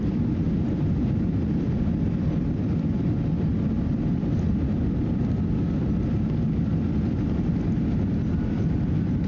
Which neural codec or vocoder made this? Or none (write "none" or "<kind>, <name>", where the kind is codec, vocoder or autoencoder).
none